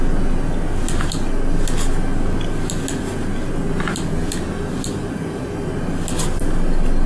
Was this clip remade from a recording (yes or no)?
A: no